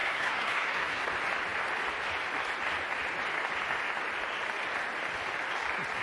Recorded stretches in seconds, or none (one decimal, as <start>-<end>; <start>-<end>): 1.1-6.0